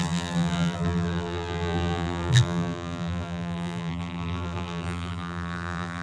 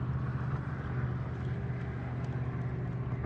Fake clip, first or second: first